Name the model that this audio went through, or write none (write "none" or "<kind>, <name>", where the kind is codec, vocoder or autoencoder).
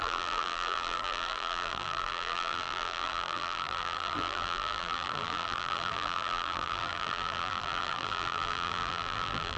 vocoder, BigVGAN v2